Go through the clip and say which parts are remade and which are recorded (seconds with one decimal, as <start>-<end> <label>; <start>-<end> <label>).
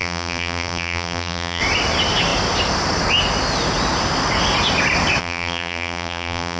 0.0-1.6 remade; 1.6-5.2 recorded; 5.2-6.6 remade